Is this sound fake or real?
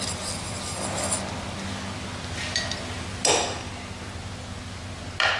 real